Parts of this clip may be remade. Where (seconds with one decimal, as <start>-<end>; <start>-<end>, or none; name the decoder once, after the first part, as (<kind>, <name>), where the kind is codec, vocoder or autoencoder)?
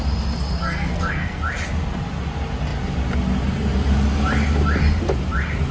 0.6-1.4 (codec, SNAC)